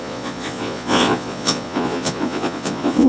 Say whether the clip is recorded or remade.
remade